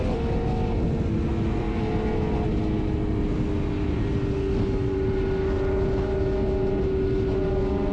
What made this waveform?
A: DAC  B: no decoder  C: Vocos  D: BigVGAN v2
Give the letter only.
B